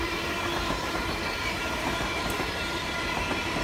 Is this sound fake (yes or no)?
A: yes